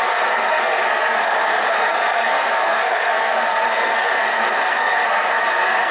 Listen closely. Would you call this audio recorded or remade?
remade